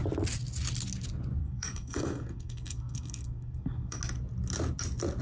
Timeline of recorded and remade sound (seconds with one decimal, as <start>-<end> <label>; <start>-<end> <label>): 0.0-1.4 recorded; 1.4-4.0 remade; 4.0-5.2 recorded